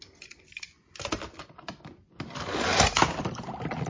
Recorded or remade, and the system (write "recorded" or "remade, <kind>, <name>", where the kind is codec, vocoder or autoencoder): recorded